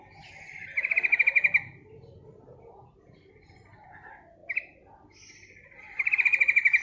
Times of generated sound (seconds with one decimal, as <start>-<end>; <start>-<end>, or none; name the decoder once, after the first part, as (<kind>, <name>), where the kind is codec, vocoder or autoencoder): none